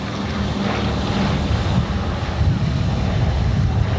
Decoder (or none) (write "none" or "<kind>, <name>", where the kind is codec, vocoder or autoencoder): none